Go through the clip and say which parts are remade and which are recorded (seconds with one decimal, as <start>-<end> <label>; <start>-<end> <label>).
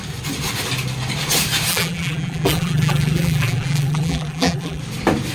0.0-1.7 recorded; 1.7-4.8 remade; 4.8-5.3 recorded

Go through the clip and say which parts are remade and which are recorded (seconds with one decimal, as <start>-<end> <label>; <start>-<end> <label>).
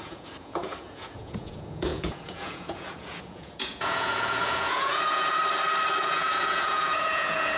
0.0-5.4 remade; 5.4-6.0 recorded; 6.0-7.6 remade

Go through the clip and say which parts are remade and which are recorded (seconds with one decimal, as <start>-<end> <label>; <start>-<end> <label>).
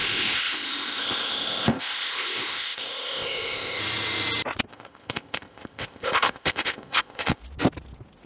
0.0-3.8 remade; 3.8-4.7 recorded; 4.7-7.4 remade; 7.4-8.3 recorded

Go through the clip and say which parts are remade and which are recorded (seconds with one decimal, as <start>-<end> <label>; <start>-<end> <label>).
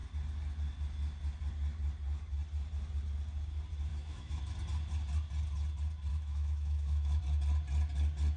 0.0-3.9 recorded; 3.9-4.4 remade; 4.4-6.1 recorded; 6.1-7.2 remade; 7.2-8.4 recorded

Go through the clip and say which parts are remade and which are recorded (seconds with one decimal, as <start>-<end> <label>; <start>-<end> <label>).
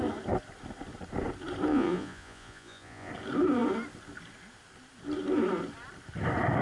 0.0-1.7 recorded; 1.7-3.1 remade; 3.1-6.6 recorded